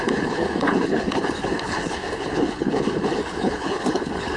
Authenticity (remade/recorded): remade